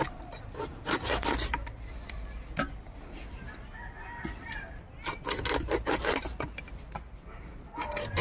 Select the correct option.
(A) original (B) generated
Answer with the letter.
A